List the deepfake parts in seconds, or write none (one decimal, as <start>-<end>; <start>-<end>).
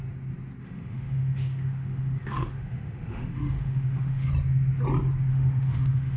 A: 0.6-4.3; 5.3-6.2